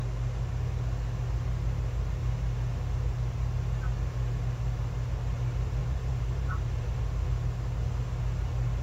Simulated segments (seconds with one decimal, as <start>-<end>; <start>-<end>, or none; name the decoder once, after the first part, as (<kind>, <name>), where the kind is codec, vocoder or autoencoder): 5.8-7.0 (vocoder, BigVGAN v2)